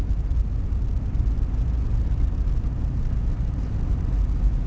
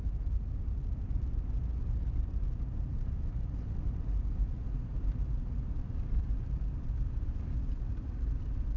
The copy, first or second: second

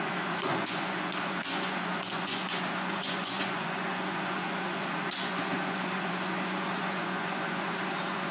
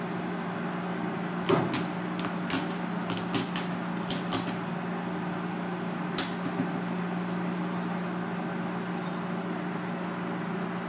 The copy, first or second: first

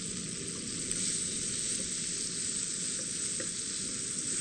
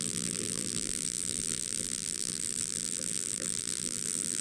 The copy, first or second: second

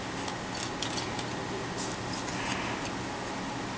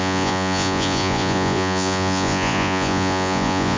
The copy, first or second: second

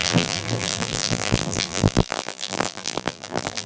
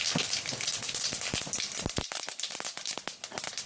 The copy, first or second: first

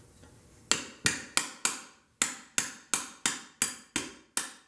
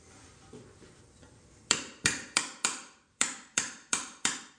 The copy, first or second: second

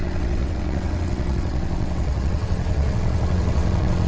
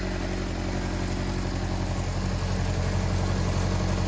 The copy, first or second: first